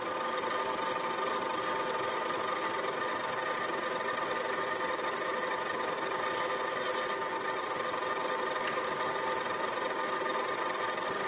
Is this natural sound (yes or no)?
yes